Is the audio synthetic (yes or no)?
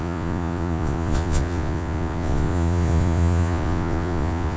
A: yes